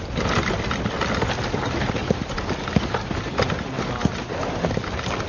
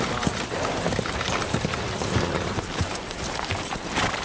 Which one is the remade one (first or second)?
second